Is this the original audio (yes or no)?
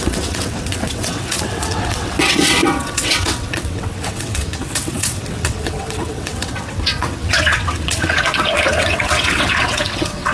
no